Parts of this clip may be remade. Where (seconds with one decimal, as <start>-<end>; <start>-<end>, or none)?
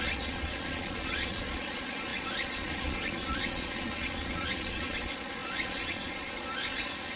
0.0-7.2